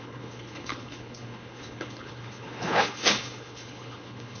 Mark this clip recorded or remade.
remade